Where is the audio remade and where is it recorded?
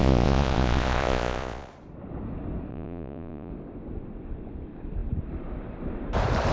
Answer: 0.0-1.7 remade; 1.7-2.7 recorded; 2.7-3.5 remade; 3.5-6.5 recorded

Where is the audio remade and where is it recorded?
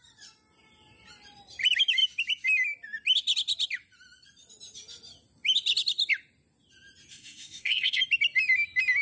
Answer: 0.0-7.1 recorded; 7.1-8.0 remade; 8.0-9.0 recorded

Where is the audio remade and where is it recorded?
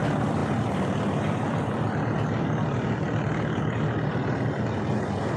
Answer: 0.0-0.4 recorded; 0.4-3.6 remade; 3.6-5.4 recorded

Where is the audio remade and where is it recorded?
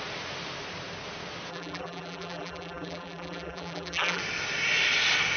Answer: 0.0-1.5 recorded; 1.5-4.2 remade; 4.2-5.4 recorded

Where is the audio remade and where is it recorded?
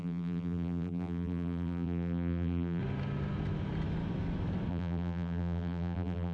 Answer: 0.0-2.8 remade; 2.8-4.7 recorded; 4.7-6.3 remade